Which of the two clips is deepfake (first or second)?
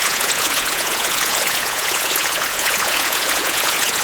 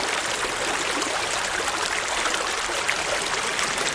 first